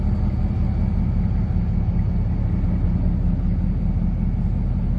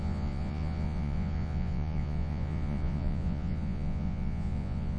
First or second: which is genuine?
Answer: first